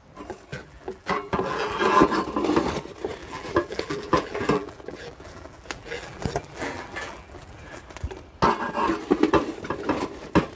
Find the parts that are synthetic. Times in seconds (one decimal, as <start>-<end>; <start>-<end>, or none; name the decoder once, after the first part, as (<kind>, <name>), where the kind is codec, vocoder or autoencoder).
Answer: 0.5-2.1 (vocoder, BigVGAN v2); 3.2-7.8